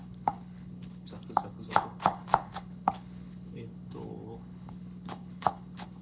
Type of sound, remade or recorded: remade